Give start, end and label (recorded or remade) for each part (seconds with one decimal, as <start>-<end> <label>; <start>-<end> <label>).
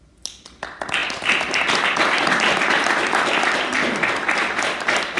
0.0-5.2 recorded